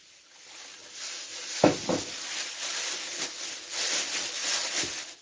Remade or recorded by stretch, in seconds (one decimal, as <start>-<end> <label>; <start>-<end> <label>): 0.0-5.2 recorded